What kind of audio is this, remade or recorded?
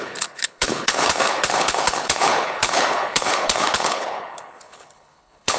remade